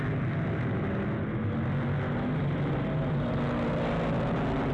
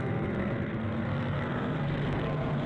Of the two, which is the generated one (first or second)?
second